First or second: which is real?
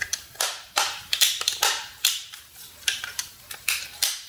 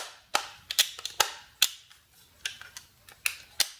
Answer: second